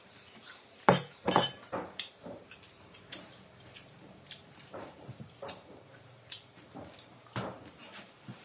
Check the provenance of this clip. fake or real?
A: fake